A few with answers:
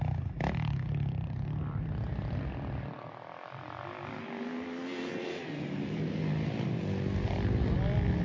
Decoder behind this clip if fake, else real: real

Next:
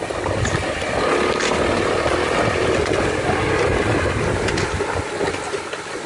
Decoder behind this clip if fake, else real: real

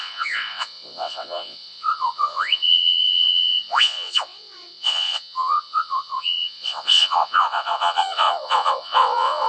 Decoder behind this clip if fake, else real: fake, vocoder, WaveNeXt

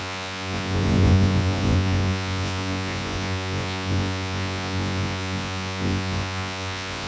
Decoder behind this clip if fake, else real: fake, vocoder, Vocos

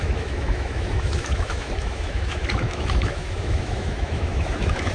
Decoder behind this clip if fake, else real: fake, autoencoder, DAC-VAE